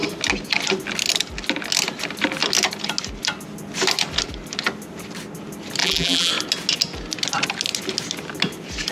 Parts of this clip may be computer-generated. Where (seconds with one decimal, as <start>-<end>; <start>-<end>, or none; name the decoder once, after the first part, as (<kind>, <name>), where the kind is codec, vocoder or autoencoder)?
5.8-6.3 (vocoder, BigVGAN v2)